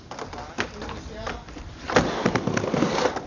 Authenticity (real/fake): real